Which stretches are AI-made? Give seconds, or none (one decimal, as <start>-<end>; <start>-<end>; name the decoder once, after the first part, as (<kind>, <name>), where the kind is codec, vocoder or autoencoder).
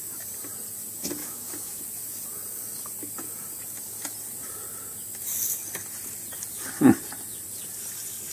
1.2-1.8 (autoencoder, DAC-VAE)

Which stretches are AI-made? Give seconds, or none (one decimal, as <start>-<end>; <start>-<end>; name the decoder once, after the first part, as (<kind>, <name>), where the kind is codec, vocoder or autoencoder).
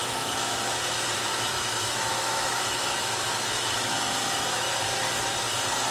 0.0-0.6 (autoencoder, DAC-VAE); 1.3-4.8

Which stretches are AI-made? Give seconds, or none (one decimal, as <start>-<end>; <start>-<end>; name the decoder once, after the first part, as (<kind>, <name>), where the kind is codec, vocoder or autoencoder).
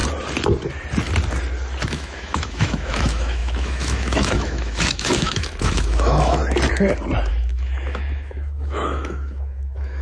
1.9-6.4 (autoencoder, DAC-VAE); 7.3-10.0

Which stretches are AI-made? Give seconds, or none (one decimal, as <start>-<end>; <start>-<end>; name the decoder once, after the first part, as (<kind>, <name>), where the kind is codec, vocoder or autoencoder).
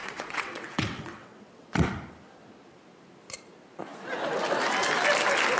0.0-1.9 (vocoder, WaveNeXt)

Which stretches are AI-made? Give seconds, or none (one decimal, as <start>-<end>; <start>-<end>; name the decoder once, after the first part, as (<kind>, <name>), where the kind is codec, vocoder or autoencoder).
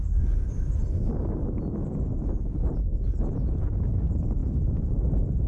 4.4-5.5 (vocoder, BigVGAN v2)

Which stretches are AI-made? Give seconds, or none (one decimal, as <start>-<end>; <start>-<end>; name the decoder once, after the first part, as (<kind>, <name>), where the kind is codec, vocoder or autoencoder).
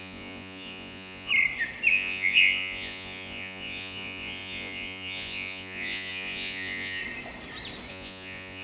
0.0-1.3 (vocoder, Vocos); 1.9-7.0; 7.9-8.6